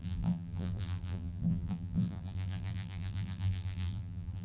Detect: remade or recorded remade